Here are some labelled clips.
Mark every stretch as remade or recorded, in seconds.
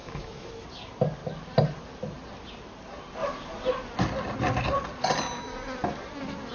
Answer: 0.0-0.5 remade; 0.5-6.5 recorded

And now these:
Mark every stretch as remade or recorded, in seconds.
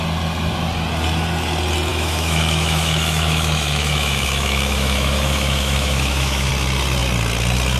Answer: 0.0-1.9 recorded; 1.9-6.5 remade; 6.5-7.8 recorded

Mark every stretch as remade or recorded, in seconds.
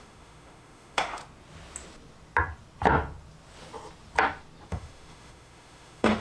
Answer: 0.0-1.2 remade; 1.2-4.7 recorded; 4.7-6.2 remade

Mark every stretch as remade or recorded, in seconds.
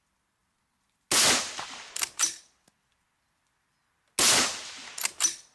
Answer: 0.0-5.5 recorded